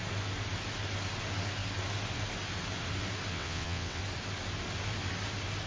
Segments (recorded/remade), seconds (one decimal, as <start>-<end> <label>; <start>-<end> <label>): 0.0-3.3 recorded; 3.3-4.0 remade; 4.0-5.7 recorded